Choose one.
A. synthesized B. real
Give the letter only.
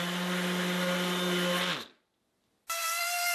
B